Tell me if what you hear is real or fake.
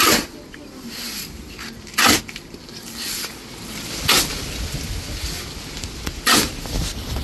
real